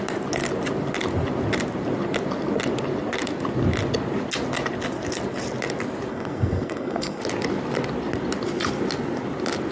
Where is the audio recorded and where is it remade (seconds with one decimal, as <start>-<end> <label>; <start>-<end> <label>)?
0.0-6.1 recorded; 6.1-7.2 remade; 7.2-9.7 recorded